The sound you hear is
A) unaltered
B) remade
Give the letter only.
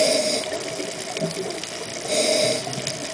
A